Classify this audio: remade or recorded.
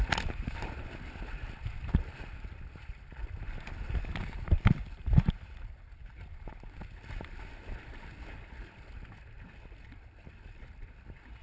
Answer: recorded